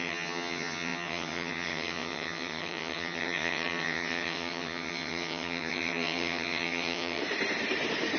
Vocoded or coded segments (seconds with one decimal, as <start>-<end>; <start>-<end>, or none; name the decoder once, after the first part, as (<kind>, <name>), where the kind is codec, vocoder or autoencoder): 0.0-7.2 (vocoder, HiFi-GAN)